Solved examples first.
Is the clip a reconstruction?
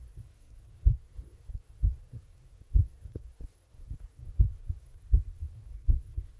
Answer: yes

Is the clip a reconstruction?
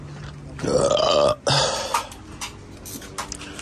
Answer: no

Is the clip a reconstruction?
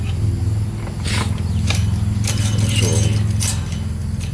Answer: no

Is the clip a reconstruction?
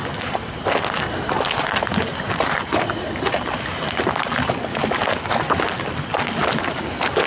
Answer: no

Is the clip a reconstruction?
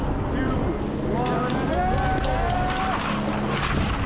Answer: no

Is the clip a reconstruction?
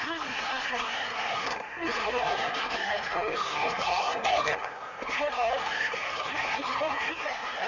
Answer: yes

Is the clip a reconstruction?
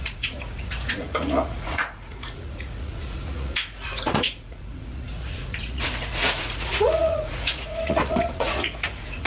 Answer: yes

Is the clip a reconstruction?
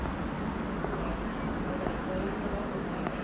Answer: no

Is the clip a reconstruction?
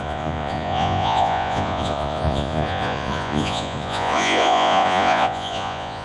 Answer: yes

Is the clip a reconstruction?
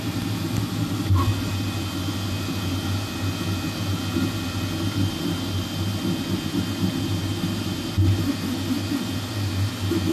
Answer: no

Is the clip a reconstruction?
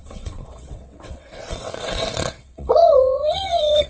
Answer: yes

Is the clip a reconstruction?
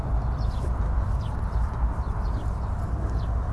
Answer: no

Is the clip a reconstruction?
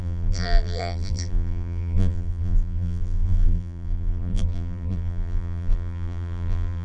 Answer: yes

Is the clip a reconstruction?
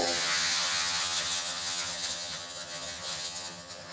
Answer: yes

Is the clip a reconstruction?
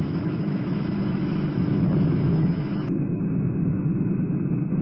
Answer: yes